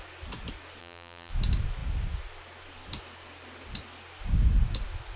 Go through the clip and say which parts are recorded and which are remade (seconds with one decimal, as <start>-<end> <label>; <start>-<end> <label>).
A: 0.0-0.8 recorded; 0.8-1.3 remade; 1.3-5.2 recorded